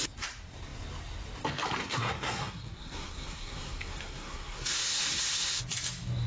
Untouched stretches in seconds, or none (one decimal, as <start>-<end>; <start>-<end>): 0.0-1.8; 5.6-6.3